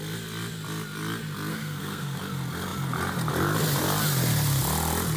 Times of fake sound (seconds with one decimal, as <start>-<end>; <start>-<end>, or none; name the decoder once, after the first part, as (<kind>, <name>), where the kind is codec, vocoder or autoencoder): 1.5-2.2 (codec, SNAC)